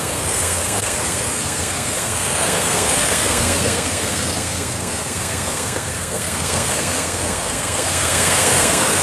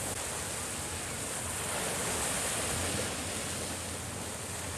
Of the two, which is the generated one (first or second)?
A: first